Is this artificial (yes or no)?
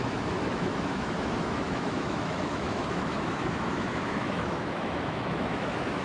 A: yes